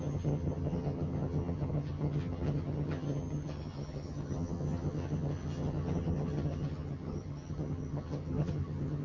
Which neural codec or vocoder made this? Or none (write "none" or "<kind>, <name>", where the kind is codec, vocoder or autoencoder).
vocoder, HiFi-GAN